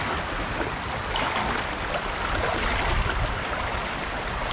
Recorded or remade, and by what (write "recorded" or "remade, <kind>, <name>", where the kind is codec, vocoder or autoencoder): recorded